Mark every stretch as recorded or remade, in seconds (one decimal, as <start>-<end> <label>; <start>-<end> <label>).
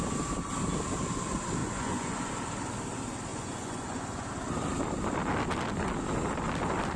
0.0-1.6 recorded; 1.6-2.3 remade; 2.3-3.3 recorded; 3.3-4.3 remade; 4.3-7.0 recorded